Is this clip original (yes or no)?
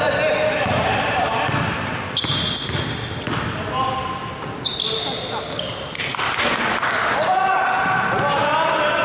yes